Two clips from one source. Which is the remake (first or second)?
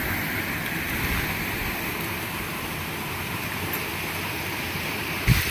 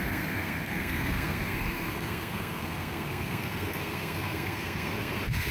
second